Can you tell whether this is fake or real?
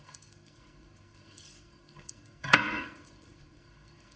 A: fake